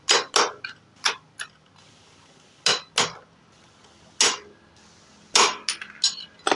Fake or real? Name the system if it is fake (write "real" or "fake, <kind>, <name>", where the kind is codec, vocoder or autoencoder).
real